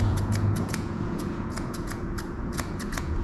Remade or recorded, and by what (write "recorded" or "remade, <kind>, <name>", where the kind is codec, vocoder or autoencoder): remade, vocoder, Vocos